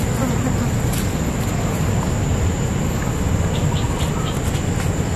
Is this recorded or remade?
recorded